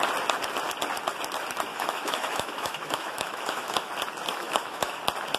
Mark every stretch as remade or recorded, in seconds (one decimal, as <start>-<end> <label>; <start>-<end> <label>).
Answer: 0.0-1.7 recorded; 1.7-3.9 remade; 3.9-4.3 recorded; 4.3-5.0 remade; 5.0-5.4 recorded